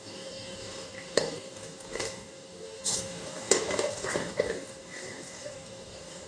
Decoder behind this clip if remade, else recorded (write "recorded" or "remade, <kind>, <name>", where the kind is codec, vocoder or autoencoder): remade, codec, DAC